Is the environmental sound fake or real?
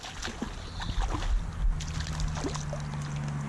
real